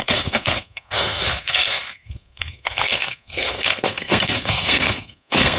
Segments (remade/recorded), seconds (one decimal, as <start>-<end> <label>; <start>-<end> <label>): 0.0-5.6 remade